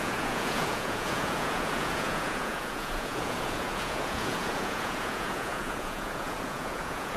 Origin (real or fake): fake